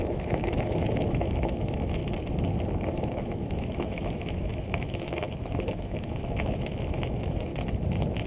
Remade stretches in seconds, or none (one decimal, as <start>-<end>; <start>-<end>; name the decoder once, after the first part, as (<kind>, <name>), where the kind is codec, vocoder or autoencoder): 0.0-2.0 (autoencoder, DAC-VAE); 2.9-7.5